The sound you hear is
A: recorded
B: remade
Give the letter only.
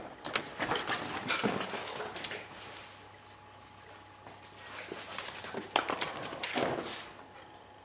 A